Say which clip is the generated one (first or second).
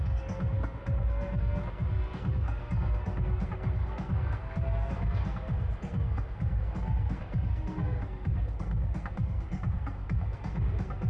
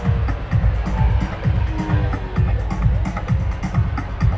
first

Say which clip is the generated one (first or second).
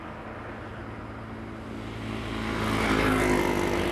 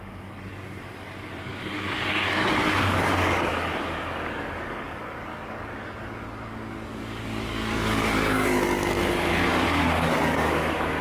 second